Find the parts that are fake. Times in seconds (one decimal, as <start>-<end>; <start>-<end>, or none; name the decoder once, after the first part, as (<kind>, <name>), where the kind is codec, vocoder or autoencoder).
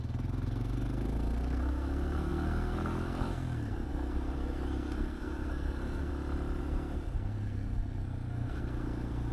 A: 0.0-6.1 (codec, SNAC); 6.6-9.3